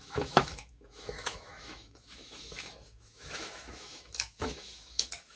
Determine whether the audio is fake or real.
fake